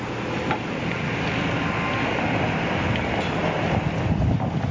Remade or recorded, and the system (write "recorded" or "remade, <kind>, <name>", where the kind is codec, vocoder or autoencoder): recorded